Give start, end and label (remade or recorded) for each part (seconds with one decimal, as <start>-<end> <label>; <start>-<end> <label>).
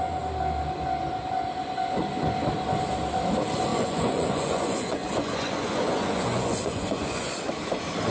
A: 0.0-3.7 recorded; 3.7-7.5 remade; 7.5-8.1 recorded